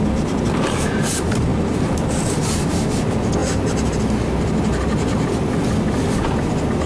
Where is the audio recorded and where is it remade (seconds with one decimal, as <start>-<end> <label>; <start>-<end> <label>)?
0.0-3.4 remade; 3.4-6.0 recorded; 6.0-6.9 remade